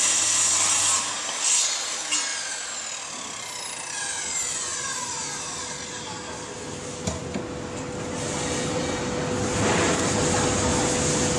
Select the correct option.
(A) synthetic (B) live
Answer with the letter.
B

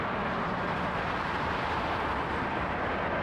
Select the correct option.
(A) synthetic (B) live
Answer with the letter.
B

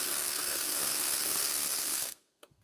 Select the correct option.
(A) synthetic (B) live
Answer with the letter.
A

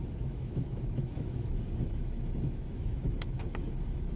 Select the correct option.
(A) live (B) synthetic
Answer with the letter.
B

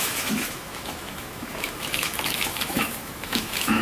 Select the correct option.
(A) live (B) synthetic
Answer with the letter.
B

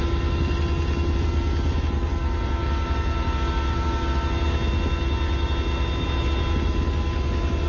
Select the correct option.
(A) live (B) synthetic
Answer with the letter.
A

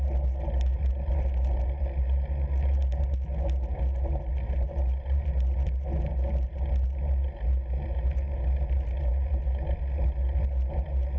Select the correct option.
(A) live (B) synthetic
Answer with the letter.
A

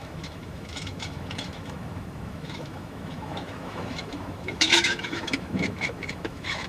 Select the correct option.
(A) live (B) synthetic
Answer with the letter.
B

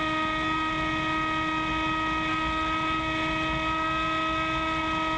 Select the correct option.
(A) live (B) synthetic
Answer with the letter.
A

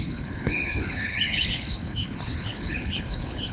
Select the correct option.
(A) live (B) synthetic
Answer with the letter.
B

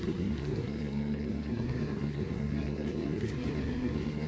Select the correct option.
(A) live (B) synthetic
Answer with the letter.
B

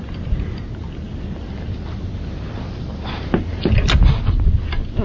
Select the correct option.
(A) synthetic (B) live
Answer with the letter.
B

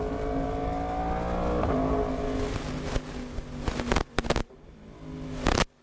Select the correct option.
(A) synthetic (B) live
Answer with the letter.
B